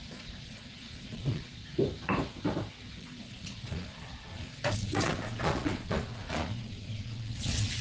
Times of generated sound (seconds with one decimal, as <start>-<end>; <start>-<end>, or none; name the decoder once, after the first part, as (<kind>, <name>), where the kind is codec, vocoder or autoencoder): 0.0-1.6 (vocoder, Vocos); 3.0-7.8